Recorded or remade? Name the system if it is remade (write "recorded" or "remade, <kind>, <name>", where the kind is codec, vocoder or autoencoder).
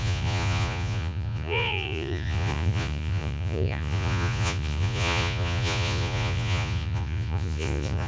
remade, vocoder, Vocos